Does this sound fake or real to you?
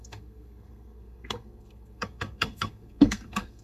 fake